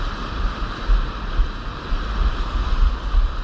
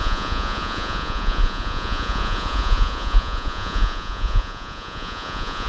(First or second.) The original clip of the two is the first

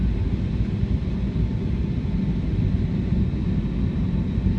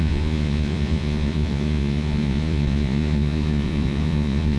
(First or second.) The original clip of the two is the first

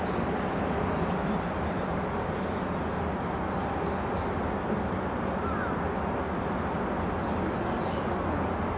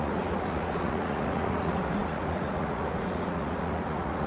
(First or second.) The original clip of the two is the first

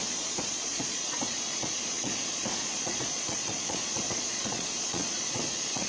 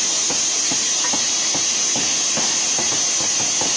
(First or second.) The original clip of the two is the second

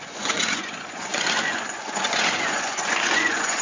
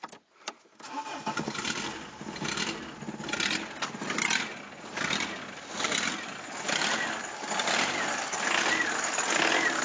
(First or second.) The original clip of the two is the second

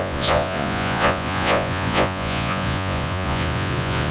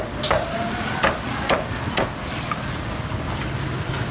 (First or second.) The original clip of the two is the second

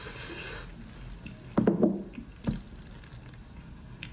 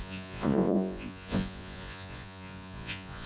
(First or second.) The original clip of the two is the first